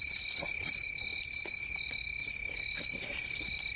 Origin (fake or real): real